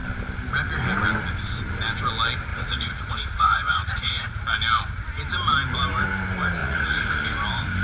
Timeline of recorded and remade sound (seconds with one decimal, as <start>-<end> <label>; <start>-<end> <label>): 0.0-2.5 recorded; 2.5-4.4 remade; 4.4-6.6 recorded; 6.6-7.1 remade; 7.1-7.8 recorded